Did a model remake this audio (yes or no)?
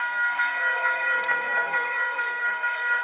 yes